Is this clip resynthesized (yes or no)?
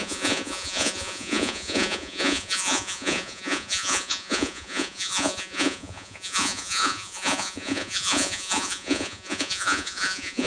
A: yes